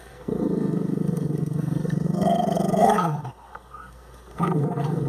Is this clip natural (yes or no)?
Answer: no